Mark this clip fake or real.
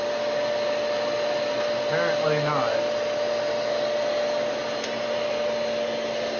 real